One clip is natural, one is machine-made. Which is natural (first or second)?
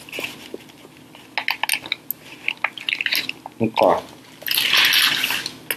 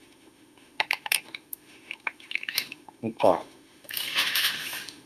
first